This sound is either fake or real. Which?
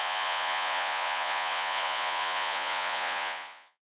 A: fake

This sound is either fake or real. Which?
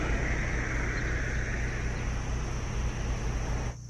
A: real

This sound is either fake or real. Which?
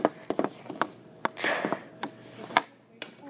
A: real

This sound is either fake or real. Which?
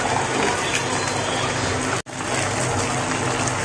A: real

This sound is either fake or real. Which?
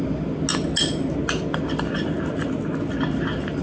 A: real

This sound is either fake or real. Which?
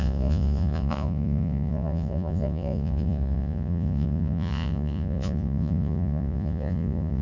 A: fake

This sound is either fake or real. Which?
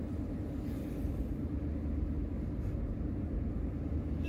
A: real